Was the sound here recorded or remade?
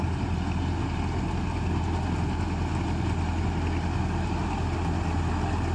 recorded